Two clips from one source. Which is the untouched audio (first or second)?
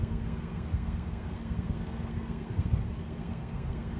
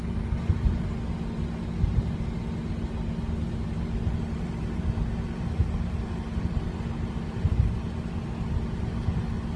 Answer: second